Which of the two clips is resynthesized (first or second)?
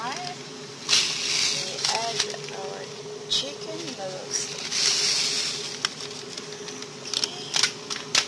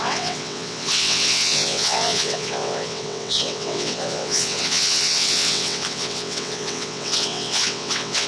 second